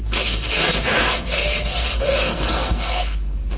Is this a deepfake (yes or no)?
yes